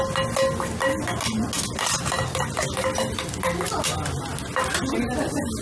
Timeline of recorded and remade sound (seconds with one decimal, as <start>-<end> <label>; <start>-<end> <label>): 0.0-5.6 recorded